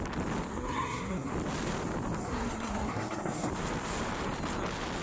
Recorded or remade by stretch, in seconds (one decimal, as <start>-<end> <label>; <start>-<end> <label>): 0.0-0.5 recorded; 0.5-1.3 remade; 1.3-2.2 recorded; 2.2-3.5 remade; 3.5-5.0 recorded